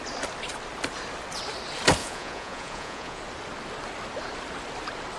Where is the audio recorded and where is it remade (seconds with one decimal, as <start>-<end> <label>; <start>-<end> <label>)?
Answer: 0.0-2.0 recorded; 2.0-3.2 remade; 3.2-5.2 recorded